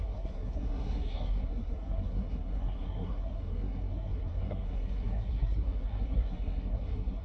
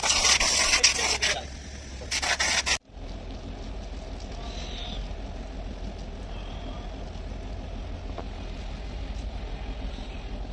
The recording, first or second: second